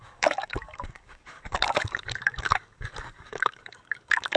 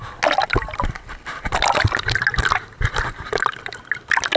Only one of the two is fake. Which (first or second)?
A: first